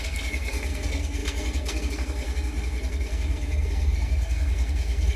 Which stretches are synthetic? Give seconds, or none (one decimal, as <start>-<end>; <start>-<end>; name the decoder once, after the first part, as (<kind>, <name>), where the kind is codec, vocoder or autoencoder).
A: 0.0-5.2 (codec, SNAC)